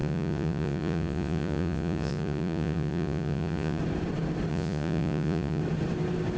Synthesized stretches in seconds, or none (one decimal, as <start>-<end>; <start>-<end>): 0.0-3.8; 4.5-5.6